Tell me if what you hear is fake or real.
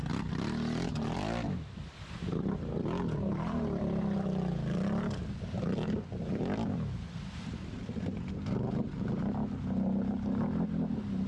real